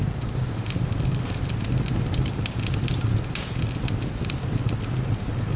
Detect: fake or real real